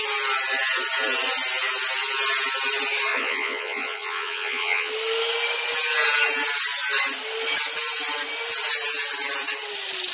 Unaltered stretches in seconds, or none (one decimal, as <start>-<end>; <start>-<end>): 0.0-3.1; 4.9-10.1